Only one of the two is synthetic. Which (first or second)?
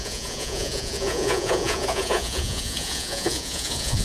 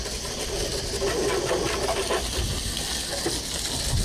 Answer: first